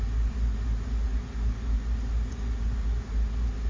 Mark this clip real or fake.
real